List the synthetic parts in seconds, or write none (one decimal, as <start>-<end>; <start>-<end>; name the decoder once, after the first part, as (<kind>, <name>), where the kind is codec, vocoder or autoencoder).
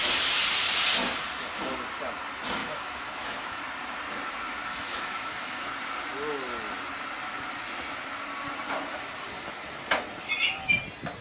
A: 2.6-3.6 (autoencoder, DAC-VAE); 4.7-5.6